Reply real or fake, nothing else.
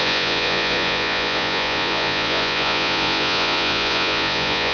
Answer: fake